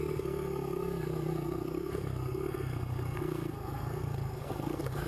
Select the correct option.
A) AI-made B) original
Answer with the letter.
A